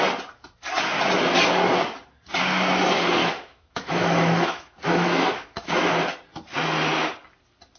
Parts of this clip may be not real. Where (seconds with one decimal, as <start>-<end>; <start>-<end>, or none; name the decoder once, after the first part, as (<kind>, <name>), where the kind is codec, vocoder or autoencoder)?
3.2-5.9 (autoencoder, DAC-VAE)

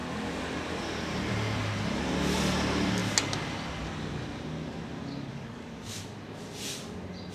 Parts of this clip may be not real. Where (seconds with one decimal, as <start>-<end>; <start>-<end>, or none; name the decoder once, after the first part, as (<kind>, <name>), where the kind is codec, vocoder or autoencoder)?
5.3-6.0 (codec, DAC)

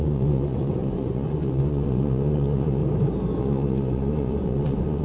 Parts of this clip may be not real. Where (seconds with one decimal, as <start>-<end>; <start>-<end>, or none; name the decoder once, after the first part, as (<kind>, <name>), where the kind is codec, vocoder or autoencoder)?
0.0-2.8 (vocoder, Vocos); 3.4-5.0

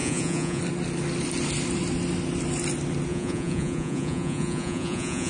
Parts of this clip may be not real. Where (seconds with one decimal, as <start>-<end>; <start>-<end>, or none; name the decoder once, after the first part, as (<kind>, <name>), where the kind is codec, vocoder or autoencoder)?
0.0-0.6 (vocoder, Vocos); 3.1-5.3

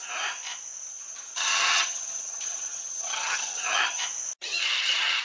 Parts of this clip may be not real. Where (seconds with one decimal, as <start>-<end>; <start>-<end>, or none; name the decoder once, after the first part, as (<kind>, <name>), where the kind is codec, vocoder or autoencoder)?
0.9-4.0 (vocoder, HiFi-GAN); 4.4-5.2

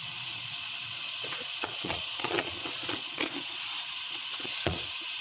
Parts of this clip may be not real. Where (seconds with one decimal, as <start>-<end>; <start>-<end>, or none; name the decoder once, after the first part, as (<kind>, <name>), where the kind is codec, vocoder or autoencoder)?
0.0-5.2 (vocoder, Vocos)

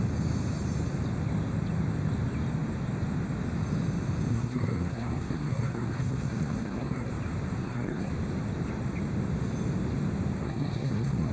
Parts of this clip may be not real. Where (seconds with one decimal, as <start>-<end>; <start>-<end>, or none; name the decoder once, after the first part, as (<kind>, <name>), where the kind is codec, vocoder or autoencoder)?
4.3-7.1 (codec, SNAC); 7.6-8.1; 10.4-11.3